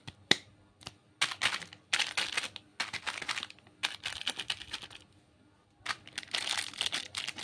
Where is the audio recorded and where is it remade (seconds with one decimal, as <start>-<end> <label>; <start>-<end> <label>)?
0.0-7.4 recorded